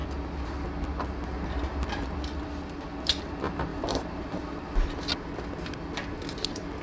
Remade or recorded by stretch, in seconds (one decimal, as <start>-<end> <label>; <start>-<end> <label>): 0.0-3.7 recorded; 3.7-4.4 remade; 4.4-6.8 recorded